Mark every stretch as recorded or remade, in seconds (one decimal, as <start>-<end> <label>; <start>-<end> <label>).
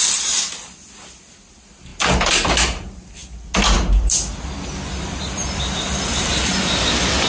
0.0-7.3 recorded